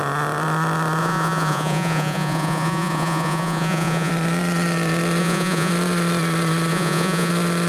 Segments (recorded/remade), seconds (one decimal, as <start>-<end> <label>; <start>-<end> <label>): 0.0-1.0 recorded; 1.0-4.1 remade; 4.1-5.2 recorded; 5.2-5.7 remade; 5.7-6.7 recorded; 6.7-7.3 remade; 7.3-7.7 recorded

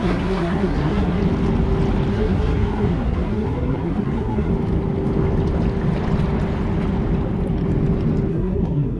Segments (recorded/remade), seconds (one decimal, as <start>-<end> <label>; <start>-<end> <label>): 0.0-1.2 remade; 1.2-2.1 recorded; 2.1-4.5 remade; 4.5-8.3 recorded; 8.3-9.0 remade

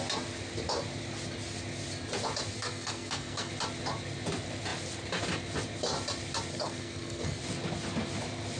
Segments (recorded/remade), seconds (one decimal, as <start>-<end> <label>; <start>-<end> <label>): 0.0-2.5 recorded; 2.5-3.5 remade; 3.5-6.5 recorded; 6.5-7.4 remade; 7.4-8.6 recorded

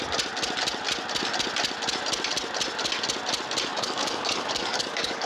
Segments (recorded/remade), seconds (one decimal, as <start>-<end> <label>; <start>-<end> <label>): 0.0-3.7 recorded; 3.7-5.3 remade

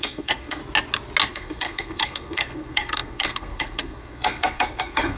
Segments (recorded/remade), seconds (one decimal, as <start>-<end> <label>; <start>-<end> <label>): 0.0-0.6 remade; 0.6-1.3 recorded; 1.3-5.2 remade

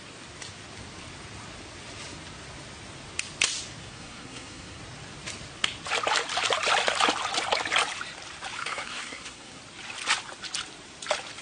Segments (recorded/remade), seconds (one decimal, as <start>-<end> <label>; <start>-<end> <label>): 0.0-3.8 recorded; 3.8-4.8 remade; 4.8-8.6 recorded; 8.6-9.6 remade; 9.6-11.4 recorded

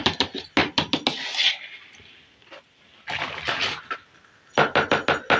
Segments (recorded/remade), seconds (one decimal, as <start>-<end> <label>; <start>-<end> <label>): 0.0-5.4 recorded

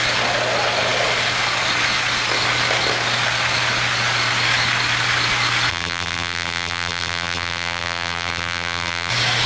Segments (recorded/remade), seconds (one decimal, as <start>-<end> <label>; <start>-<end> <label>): 0.0-5.7 recorded; 5.7-9.1 remade; 9.1-9.5 recorded